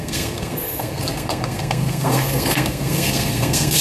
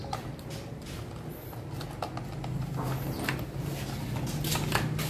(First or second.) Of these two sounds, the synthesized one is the first